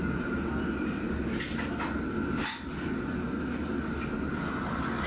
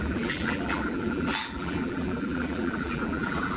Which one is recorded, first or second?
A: first